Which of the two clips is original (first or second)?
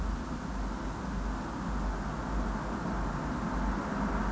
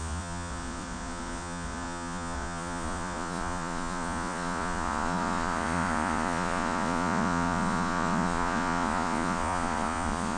first